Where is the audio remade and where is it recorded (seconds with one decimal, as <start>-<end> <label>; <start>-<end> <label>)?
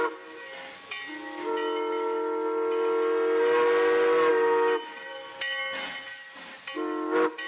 0.0-7.5 recorded